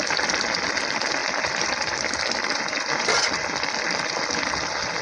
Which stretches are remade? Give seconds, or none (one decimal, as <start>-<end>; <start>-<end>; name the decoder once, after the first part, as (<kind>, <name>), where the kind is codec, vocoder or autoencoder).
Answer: 1.2-4.2 (vocoder, BigVGAN v2)